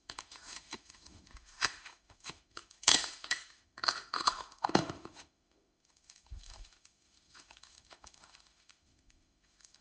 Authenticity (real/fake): fake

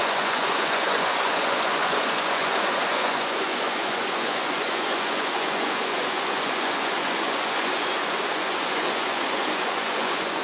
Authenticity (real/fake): fake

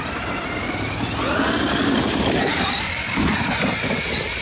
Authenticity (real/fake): real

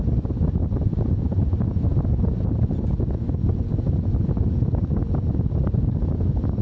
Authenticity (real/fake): real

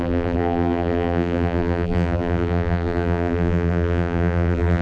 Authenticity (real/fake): fake